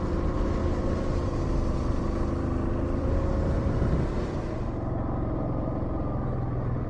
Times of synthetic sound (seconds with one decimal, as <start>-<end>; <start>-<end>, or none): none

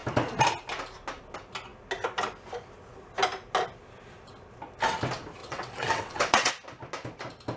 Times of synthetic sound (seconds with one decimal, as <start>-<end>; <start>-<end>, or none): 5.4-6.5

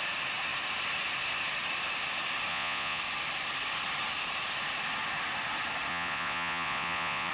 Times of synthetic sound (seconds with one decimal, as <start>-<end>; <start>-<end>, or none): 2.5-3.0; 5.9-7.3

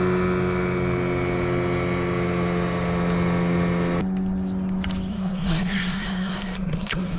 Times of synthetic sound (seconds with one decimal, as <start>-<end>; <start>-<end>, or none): 5.1-7.2